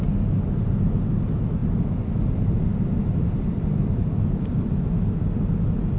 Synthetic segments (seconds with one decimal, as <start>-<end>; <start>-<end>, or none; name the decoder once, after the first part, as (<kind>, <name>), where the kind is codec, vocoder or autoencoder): 1.6-4.7 (vocoder, BigVGAN v2)